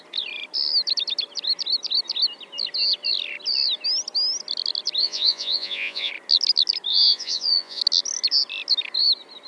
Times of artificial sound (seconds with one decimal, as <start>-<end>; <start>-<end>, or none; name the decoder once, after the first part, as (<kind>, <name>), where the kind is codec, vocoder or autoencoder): 5.0-6.1 (vocoder, Vocos); 6.9-7.8